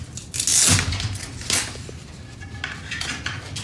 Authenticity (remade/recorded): recorded